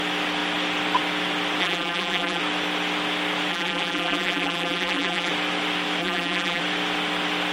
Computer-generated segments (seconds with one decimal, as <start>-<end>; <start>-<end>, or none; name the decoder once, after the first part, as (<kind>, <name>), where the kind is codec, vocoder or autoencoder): 1.6-2.4 (vocoder, BigVGAN v2); 3.5-5.3; 6.0-6.6